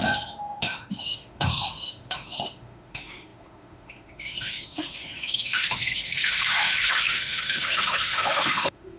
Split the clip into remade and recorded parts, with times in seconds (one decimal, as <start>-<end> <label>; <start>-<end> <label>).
0.0-9.0 remade